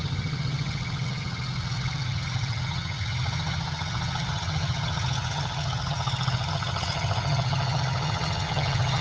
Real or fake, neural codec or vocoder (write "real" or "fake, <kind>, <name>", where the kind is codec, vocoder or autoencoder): fake, vocoder, HiFi-GAN